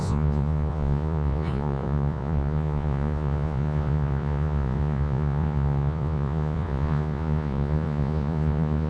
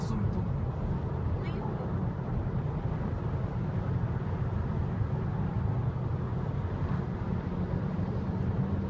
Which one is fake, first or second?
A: first